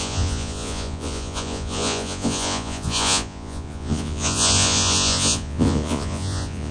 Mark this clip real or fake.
fake